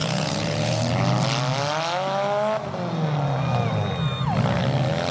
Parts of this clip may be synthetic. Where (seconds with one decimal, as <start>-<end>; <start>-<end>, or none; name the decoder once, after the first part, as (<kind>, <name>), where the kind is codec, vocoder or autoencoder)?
0.0-0.8 (vocoder, Vocos)